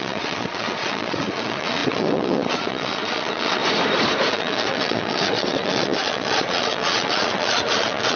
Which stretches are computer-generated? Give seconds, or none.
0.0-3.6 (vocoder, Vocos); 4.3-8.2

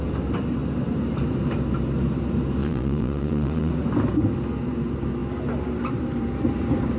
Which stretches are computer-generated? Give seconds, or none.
2.6-3.7 (vocoder, Vocos)